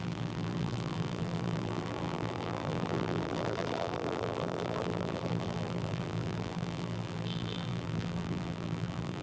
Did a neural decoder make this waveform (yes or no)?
yes